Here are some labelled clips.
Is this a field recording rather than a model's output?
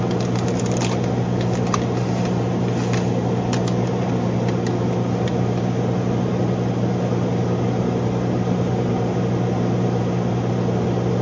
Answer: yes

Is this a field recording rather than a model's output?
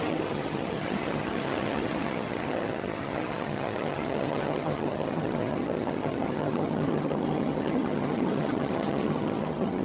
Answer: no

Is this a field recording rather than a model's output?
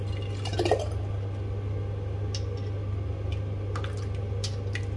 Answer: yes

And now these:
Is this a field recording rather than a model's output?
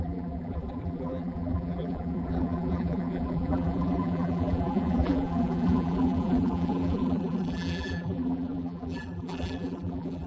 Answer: no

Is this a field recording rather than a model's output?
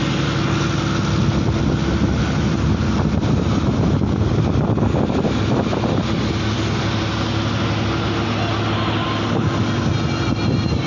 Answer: yes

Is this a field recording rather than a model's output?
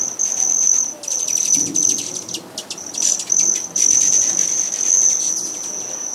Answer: yes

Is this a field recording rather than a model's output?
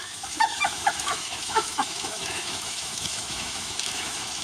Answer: no